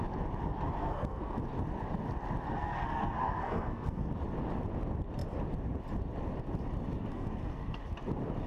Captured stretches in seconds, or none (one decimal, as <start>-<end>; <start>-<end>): 0.0-0.8; 1.4-2.5; 4.1-7.1; 7.8-8.5